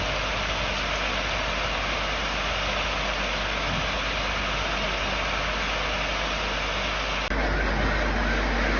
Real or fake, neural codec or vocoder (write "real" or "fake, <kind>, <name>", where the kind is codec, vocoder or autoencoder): real